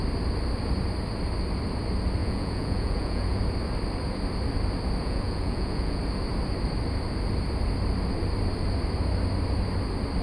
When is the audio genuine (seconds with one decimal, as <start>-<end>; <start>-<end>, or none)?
0.0-2.2; 3.4-5.0; 6.0-10.2